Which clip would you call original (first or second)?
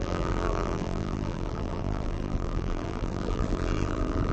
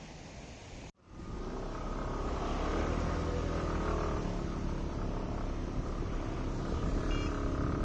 second